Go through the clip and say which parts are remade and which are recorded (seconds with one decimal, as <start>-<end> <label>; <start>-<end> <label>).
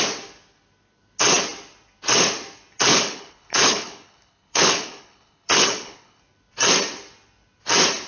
0.0-2.9 recorded; 2.9-6.2 remade; 6.2-8.1 recorded